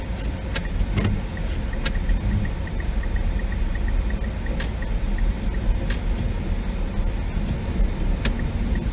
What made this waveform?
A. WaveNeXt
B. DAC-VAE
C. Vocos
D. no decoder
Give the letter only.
D